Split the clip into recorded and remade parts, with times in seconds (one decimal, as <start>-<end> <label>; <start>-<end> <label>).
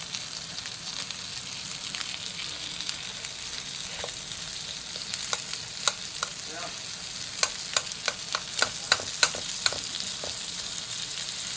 0.0-11.6 recorded